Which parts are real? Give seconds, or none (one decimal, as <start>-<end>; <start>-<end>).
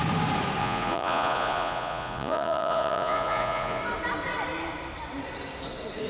0.0-0.6; 3.8-6.1